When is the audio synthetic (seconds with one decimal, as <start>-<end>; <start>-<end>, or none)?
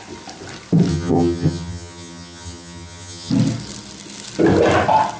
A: 0.9-3.3